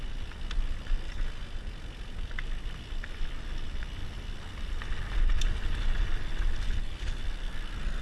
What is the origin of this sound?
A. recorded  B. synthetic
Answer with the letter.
A